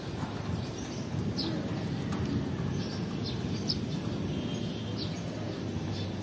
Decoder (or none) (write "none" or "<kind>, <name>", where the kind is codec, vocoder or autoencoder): none